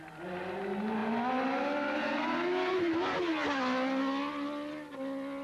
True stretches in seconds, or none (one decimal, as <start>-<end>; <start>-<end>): 0.0-5.4